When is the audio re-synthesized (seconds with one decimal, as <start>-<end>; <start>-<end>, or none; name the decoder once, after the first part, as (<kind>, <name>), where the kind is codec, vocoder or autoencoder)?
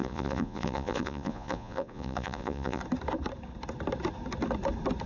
0.0-2.8 (vocoder, Vocos)